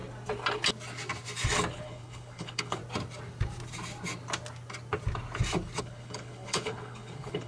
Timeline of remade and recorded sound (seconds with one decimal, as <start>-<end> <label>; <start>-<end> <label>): 0.0-1.7 recorded; 1.7-2.8 remade; 2.8-5.8 recorded; 5.8-7.5 remade